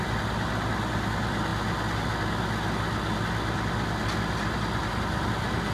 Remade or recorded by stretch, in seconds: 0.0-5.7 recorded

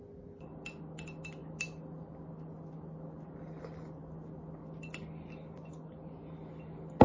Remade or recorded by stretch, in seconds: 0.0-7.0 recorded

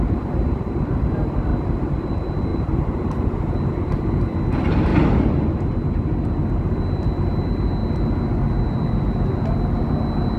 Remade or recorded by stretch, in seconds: 0.0-1.5 recorded; 1.5-2.1 remade; 2.1-2.5 recorded; 2.5-4.1 remade; 4.1-10.4 recorded

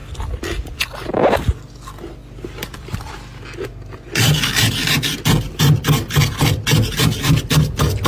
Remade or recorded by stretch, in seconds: 0.0-8.1 recorded

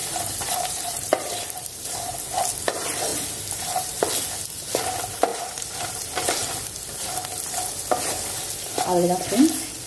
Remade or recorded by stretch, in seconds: 0.0-1.8 remade; 1.8-3.1 recorded; 3.1-4.0 remade; 4.0-5.3 recorded; 5.3-5.9 remade; 5.9-9.9 recorded

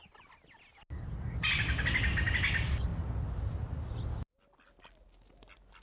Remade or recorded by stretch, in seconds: 0.0-5.8 recorded

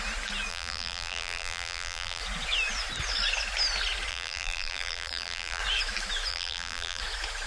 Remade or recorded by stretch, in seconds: 0.0-0.5 recorded; 0.5-2.2 remade; 2.2-4.1 recorded; 4.1-5.6 remade; 5.6-6.3 recorded; 6.3-7.0 remade; 7.0-7.5 recorded